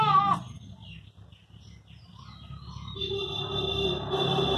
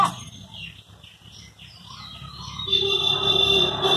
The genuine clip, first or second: first